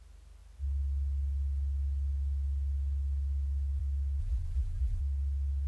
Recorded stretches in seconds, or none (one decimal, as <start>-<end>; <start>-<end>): 0.0-4.2; 5.0-5.7